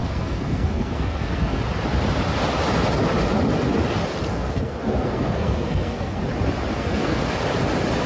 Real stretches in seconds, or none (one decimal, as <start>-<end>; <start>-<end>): 1.6-4.3; 6.2-6.7; 7.2-8.1